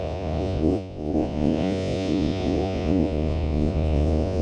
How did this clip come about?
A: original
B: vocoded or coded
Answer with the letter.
B